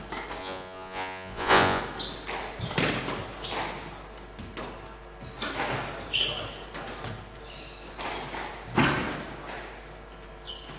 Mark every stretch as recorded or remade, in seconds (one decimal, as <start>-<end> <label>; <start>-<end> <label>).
0.0-0.4 recorded; 0.4-1.8 remade; 1.8-10.8 recorded